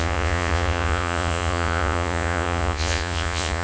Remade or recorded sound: remade